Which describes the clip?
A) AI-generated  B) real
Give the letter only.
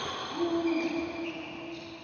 B